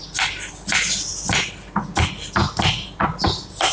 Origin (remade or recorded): recorded